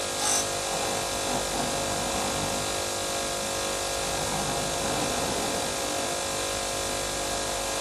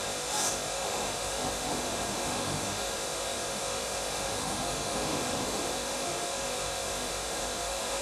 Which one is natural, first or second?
first